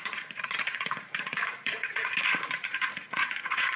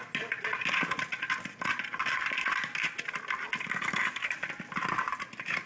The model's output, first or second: first